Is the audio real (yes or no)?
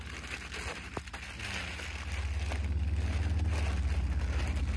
yes